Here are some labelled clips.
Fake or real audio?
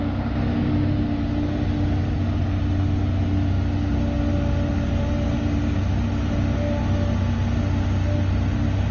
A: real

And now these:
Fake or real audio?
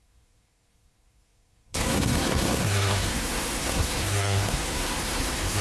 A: fake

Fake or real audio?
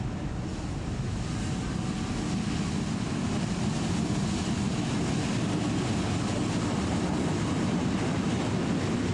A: real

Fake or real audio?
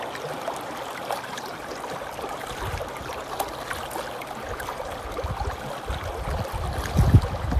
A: real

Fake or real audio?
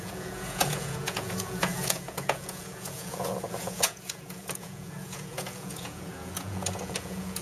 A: fake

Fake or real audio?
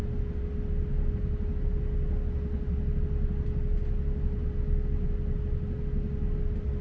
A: real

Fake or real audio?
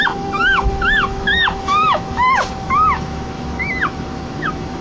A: fake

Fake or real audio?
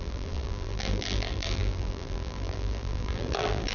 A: fake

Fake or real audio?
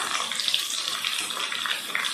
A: fake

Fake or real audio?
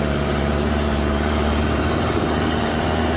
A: fake